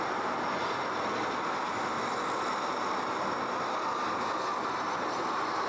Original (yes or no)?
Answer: yes